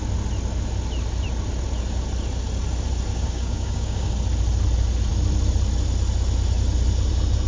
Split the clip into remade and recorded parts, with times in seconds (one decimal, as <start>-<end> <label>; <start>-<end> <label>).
0.0-3.1 recorded; 3.1-4.1 remade; 4.1-7.5 recorded